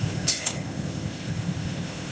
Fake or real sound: fake